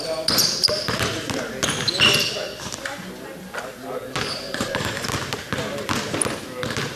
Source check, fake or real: real